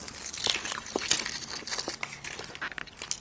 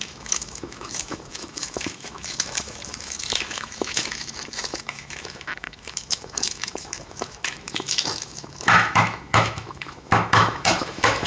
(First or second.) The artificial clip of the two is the second